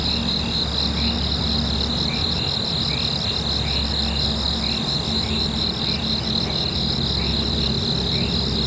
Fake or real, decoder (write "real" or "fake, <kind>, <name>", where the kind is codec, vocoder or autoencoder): real